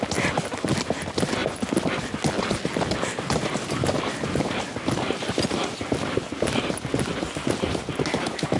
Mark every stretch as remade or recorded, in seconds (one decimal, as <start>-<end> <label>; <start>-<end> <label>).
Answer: 0.0-8.6 recorded